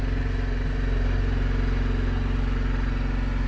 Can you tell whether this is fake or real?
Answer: real